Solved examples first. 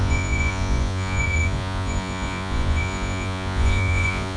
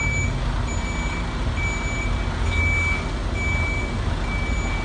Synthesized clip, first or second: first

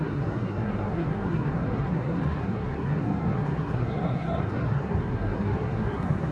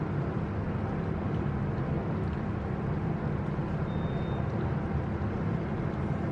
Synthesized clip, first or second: first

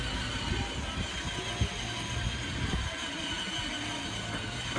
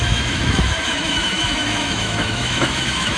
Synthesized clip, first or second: second